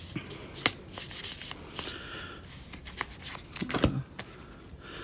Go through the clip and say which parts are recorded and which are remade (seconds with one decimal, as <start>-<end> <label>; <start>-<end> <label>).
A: 0.0-5.0 recorded